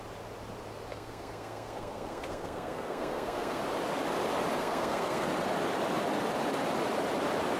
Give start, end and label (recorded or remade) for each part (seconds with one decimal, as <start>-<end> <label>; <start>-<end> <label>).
0.0-0.9 recorded; 0.9-3.6 remade; 3.6-4.6 recorded; 4.6-5.3 remade; 5.3-7.6 recorded